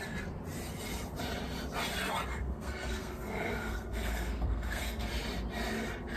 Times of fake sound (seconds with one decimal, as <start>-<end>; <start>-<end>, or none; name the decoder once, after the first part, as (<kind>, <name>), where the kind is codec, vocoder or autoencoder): 2.3-5.1 (codec, SNAC)